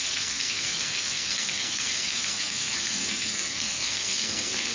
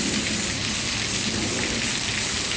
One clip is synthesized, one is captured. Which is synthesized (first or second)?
first